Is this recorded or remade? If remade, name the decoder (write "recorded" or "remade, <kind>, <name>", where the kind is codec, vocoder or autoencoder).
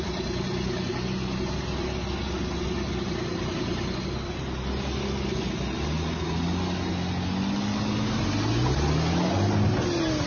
recorded